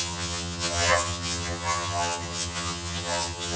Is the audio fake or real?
fake